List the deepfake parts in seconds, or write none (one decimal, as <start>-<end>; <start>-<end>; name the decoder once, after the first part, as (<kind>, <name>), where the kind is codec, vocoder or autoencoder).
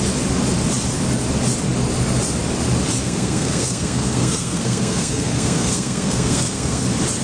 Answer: 3.0-6.8 (codec, SNAC)